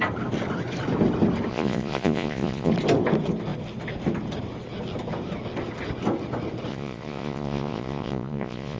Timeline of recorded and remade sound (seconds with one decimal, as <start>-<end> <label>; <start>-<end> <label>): 0.0-1.5 recorded; 1.5-2.7 remade; 2.7-6.7 recorded; 6.7-8.8 remade